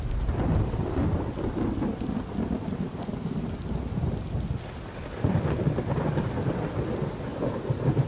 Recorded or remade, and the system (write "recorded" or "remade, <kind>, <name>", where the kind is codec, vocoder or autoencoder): recorded